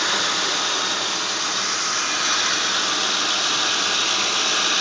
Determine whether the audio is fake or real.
real